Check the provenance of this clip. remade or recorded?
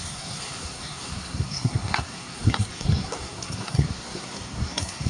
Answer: remade